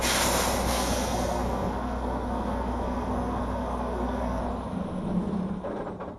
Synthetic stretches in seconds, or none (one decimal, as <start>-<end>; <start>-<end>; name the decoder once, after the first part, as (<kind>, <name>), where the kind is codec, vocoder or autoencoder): 0.7-4.4 (codec, SNAC)